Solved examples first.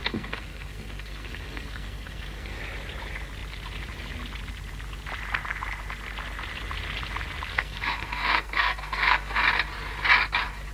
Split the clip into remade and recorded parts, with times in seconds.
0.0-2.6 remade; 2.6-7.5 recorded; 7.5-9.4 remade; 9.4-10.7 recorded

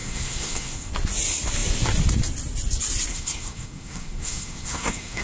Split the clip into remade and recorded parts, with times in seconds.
0.0-0.9 remade; 0.9-3.1 recorded; 3.1-5.2 remade

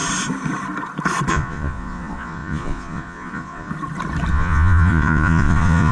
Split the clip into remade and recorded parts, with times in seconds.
0.0-1.3 recorded; 1.3-3.7 remade; 3.7-4.3 recorded; 4.3-5.9 remade

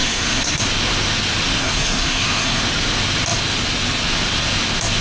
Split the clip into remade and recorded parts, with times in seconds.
0.0-0.6 remade; 0.6-1.6 recorded; 1.6-2.6 remade; 2.6-5.0 recorded